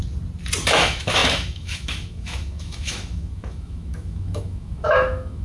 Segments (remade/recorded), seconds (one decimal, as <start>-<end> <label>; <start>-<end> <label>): 0.0-0.7 recorded; 0.7-5.4 remade